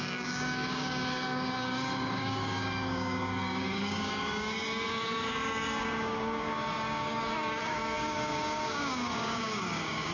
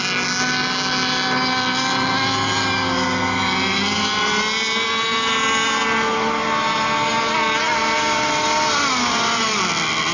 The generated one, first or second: first